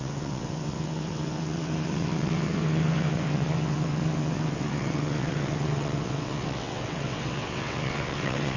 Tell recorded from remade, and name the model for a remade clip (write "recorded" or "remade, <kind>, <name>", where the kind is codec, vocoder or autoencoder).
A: remade, vocoder, WaveNeXt